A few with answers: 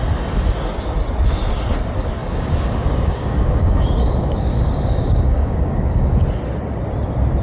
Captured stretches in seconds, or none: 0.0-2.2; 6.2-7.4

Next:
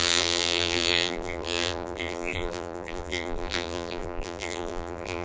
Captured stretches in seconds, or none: none

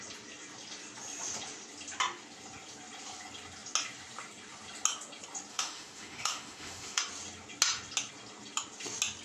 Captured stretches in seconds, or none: 0.0-5.5; 7.0-9.2

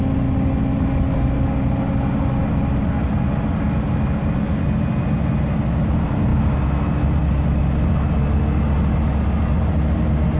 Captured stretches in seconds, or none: 0.0-10.4

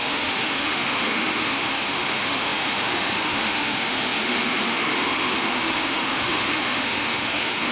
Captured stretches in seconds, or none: none

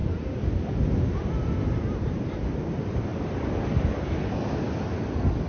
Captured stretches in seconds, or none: 0.0-5.5

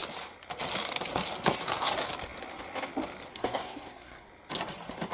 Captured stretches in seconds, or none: 0.0-3.3; 4.3-5.1

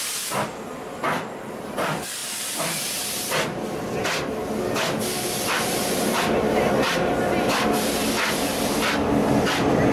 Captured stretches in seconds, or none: 0.0-9.9